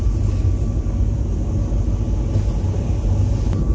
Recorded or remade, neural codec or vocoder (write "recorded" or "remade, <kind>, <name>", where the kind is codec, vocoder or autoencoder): recorded